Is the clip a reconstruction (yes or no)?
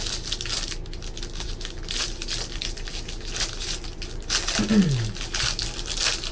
no